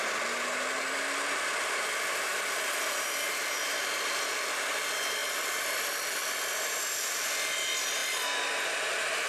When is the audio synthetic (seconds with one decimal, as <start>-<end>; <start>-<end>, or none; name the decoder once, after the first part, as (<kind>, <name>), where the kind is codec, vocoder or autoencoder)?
none